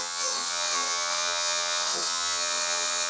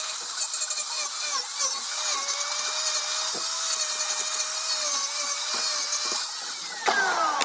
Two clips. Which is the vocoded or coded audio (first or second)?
first